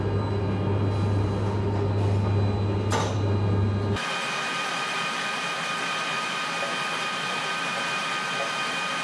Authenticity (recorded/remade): recorded